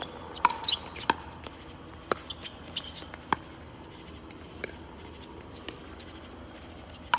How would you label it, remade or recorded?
recorded